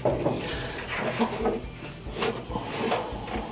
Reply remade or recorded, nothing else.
recorded